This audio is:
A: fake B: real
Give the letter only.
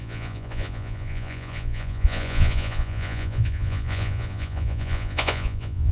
A